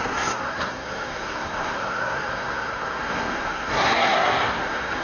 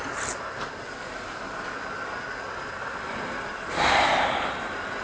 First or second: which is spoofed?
first